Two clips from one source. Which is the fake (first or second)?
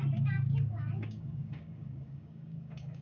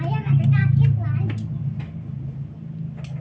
first